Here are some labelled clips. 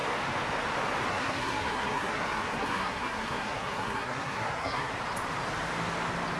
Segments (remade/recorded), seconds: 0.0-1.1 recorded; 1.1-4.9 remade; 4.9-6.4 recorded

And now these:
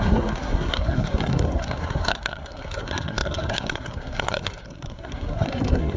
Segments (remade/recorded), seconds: 0.0-6.0 remade

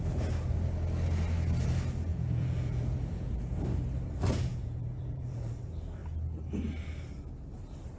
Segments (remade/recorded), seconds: 0.0-2.1 recorded; 2.1-3.6 remade; 3.6-4.5 recorded; 4.5-5.6 remade; 5.6-8.0 recorded

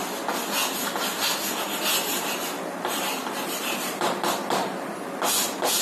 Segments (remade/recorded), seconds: 0.0-1.9 recorded; 1.9-4.9 remade; 4.9-5.8 recorded